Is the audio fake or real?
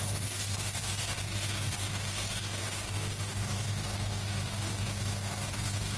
fake